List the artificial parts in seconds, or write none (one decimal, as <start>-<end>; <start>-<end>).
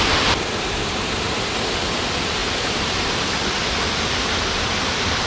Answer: 2.4-3.5